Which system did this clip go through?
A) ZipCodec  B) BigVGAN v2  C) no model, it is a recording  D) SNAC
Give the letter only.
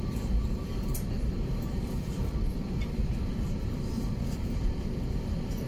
B